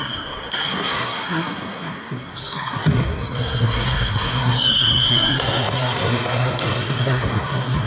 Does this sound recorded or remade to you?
remade